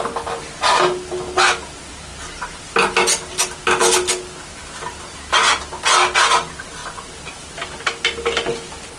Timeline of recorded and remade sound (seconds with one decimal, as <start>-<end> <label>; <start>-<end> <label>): 0.0-9.0 recorded